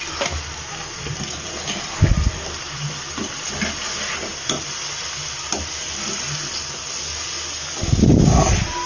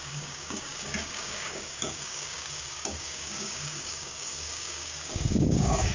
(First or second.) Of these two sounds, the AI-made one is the second